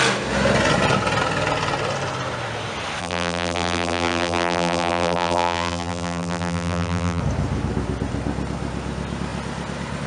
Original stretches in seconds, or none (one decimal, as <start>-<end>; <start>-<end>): 0.0-3.0; 7.2-10.1